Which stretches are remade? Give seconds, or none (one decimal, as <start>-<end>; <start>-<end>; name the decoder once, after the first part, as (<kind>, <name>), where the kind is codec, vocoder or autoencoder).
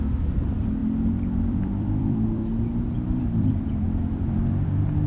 0.0-0.8 (vocoder, BigVGAN v2); 1.5-2.4; 3.2-5.1